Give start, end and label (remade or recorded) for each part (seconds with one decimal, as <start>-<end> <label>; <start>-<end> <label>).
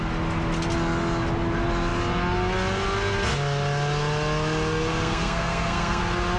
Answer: 0.0-4.9 recorded; 4.9-6.0 remade; 6.0-6.4 recorded